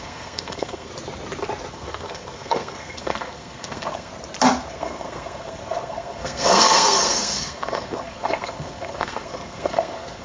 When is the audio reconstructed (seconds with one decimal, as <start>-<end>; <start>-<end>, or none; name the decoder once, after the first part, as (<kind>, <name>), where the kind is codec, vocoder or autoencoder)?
0.0-0.9 (codec, SNAC); 1.7-4.1; 4.7-10.2